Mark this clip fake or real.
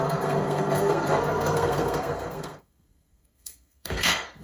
fake